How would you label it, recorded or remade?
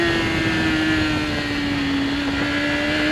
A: recorded